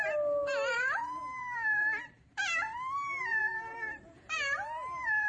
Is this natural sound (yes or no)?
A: no